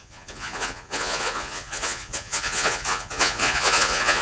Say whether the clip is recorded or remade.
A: remade